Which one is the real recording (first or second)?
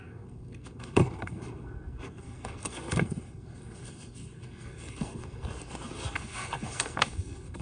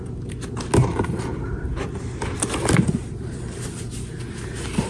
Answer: second